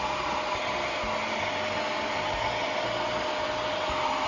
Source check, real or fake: real